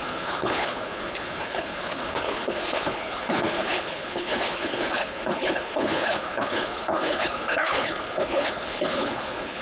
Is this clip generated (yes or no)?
yes